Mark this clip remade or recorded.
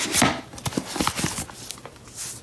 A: recorded